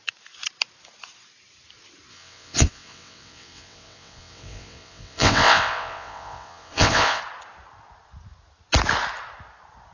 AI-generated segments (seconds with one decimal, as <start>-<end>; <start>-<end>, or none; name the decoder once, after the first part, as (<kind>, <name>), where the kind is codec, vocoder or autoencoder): 2.1-7.2 (vocoder, WaveNeXt)